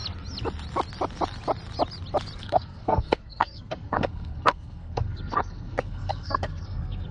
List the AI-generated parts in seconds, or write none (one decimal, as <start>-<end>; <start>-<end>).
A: 2.4-7.1